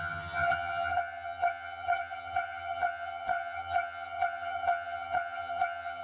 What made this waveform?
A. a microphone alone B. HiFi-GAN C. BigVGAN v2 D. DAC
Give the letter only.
B